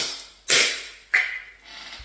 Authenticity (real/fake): real